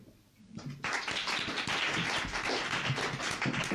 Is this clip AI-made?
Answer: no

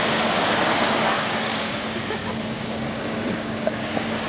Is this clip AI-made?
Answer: yes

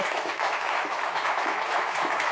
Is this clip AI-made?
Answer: yes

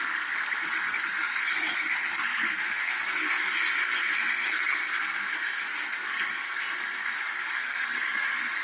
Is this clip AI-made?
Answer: yes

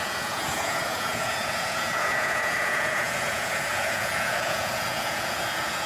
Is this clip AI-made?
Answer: yes